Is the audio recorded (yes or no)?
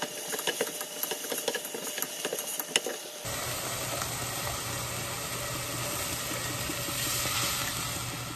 yes